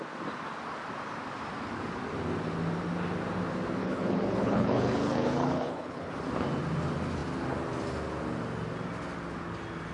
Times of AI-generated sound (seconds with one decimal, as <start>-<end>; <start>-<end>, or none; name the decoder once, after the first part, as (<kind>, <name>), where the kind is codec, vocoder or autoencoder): 3.8-6.1 (codec, HILCodec)